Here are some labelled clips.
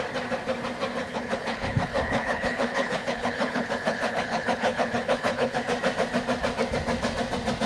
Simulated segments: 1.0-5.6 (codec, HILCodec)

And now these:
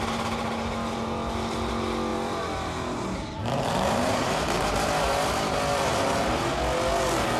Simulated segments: 2.1-6.5 (vocoder, BigVGAN v2)

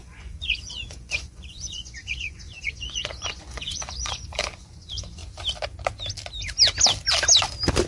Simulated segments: 0.0-5.2 (vocoder, Vocos)

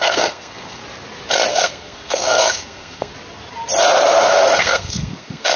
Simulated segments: 0.0-0.8 (codec, SNAC); 1.5-3.1; 4.6-5.6

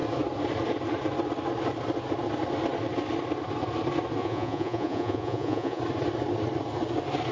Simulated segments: 4.2-5.8 (vocoder, Vocos)